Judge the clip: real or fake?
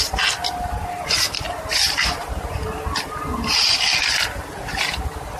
real